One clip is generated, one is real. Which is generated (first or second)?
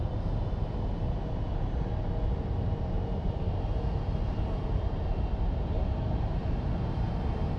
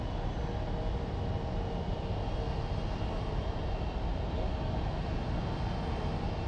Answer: first